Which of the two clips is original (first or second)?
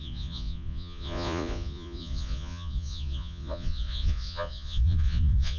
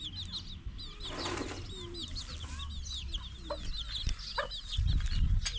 second